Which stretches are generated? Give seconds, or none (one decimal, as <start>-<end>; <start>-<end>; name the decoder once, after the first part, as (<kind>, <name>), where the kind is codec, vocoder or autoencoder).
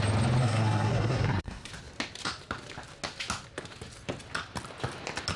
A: 0.4-1.7 (codec, SNAC)